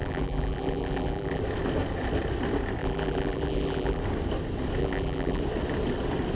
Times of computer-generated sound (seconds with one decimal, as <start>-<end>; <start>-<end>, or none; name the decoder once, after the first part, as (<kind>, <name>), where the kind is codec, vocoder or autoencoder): 0.0-1.4 (vocoder, BigVGAN v2); 2.8-4.0; 4.8-5.4